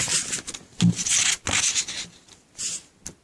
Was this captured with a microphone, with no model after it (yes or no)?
yes